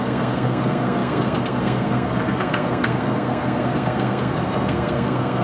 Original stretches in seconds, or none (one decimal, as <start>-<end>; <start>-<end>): none